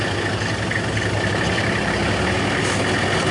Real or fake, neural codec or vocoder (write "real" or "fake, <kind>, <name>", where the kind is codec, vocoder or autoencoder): real